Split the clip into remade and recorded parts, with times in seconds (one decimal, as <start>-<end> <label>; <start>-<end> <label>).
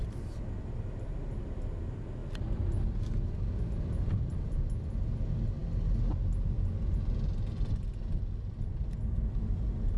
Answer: 0.0-10.0 recorded